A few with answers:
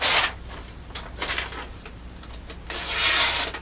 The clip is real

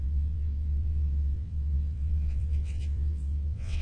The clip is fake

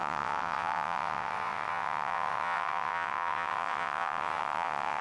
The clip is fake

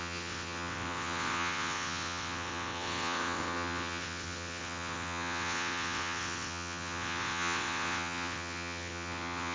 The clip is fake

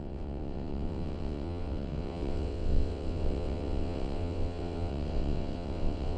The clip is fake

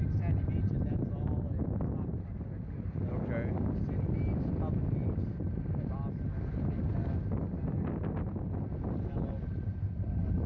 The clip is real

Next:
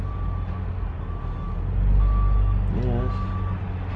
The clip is real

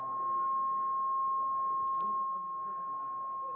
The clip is real